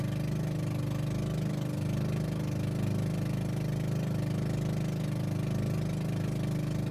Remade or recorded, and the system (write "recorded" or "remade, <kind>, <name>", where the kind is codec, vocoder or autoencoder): recorded